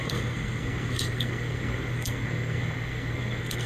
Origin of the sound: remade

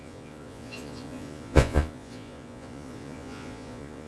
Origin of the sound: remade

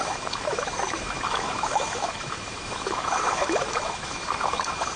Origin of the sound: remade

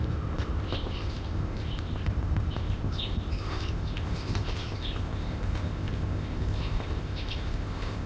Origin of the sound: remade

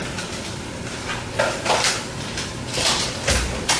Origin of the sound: remade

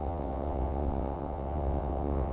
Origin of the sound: remade